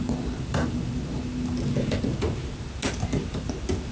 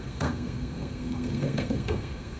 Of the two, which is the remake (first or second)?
second